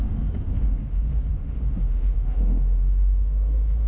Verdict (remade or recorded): remade